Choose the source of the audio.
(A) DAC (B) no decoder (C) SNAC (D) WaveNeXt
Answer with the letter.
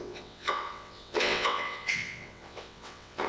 D